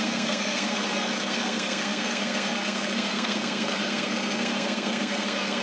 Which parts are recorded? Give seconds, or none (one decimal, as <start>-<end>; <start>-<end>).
none